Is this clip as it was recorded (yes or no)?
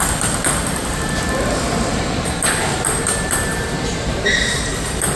no